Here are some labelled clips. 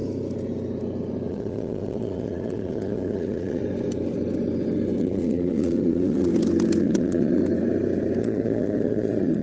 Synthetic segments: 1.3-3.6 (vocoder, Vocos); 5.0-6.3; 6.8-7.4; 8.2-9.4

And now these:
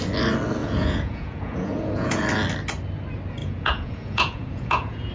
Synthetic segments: 0.6-2.2 (vocoder, Vocos); 3.4-5.1

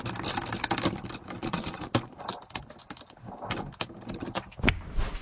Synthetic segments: 1.4-1.9 (vocoder, Vocos)

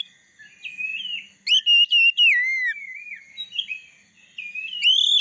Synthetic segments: none